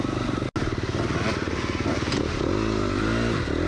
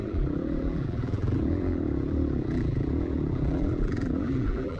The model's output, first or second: second